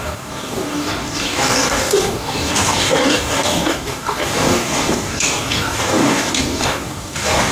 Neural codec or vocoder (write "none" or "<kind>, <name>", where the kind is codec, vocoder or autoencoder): codec, DAC